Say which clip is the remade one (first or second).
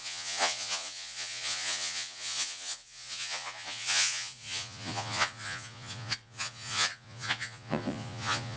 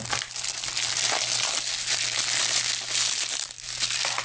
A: first